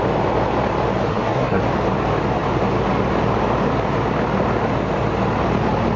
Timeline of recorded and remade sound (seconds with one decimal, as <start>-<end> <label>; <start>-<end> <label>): 0.0-1.1 recorded; 1.1-1.6 remade; 1.6-6.0 recorded